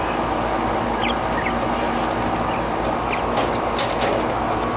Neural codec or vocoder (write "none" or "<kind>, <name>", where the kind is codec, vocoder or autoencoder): none